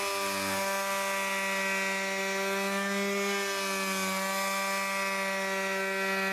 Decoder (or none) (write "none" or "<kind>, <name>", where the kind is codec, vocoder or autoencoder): none